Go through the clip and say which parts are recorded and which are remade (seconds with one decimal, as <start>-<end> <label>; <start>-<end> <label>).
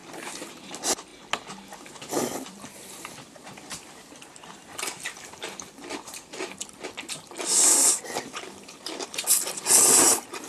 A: 0.0-0.5 recorded; 0.5-1.1 remade; 1.1-1.8 recorded; 1.8-10.5 remade